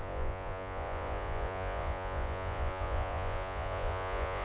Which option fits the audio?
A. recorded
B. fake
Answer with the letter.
B